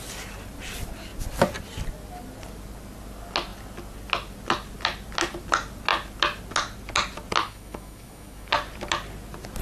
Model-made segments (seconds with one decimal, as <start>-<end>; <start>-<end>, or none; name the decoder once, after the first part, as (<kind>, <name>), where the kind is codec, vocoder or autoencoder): 7.4-8.5 (autoencoder, DAC-VAE)